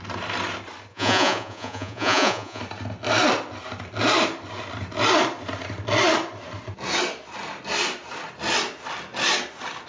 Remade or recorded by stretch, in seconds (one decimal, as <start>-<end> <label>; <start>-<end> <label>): 0.0-0.9 recorded; 0.9-2.6 remade; 2.6-9.9 recorded